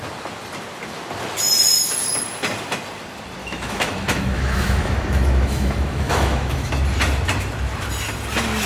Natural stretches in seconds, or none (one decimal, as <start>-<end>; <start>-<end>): 0.0-3.4; 6.7-8.7